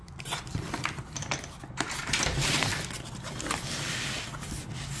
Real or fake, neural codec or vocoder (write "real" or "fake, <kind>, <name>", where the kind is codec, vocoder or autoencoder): real